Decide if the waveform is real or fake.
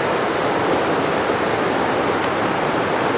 real